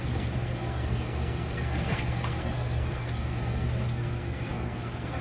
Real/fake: fake